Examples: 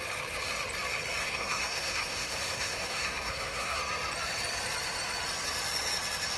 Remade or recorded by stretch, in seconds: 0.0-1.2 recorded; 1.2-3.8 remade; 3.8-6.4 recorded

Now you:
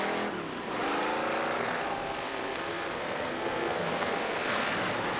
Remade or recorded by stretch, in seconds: 0.0-1.6 recorded; 1.6-4.7 remade; 4.7-5.2 recorded